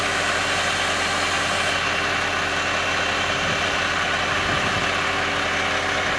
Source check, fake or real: real